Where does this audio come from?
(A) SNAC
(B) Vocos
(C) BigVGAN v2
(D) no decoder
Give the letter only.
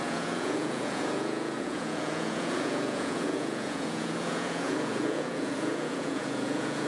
B